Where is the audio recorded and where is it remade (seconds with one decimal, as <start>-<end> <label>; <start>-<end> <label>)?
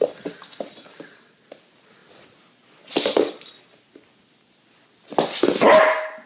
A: 0.0-6.3 recorded